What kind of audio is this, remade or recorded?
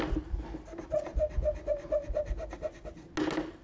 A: recorded